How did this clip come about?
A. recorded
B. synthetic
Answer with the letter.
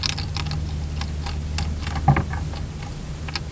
A